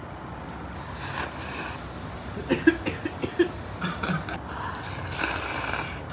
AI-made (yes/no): no